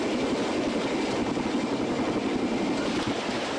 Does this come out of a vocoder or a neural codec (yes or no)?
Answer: no